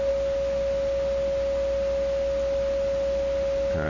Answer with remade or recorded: recorded